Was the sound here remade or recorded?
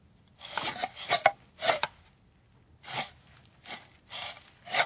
recorded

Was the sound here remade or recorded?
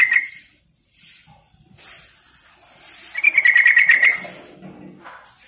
recorded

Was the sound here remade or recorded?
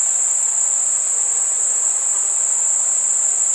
recorded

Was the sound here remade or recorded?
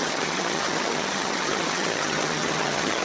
remade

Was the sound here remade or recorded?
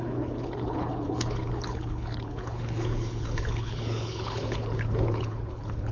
remade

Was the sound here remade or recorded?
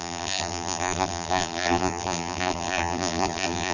remade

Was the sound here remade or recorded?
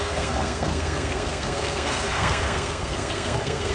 remade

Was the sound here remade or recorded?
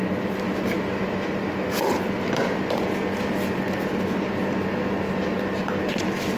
recorded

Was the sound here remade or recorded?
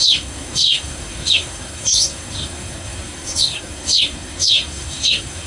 remade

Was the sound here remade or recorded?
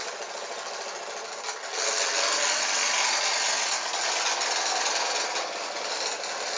recorded